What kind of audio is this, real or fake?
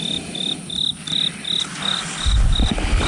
real